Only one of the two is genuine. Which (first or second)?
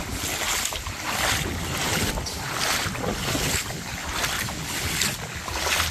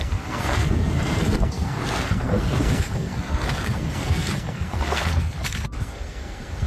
first